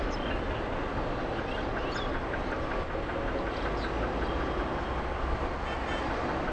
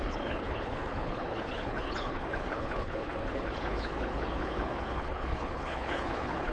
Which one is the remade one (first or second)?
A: second